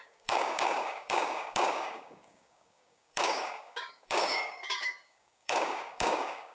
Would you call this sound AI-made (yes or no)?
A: yes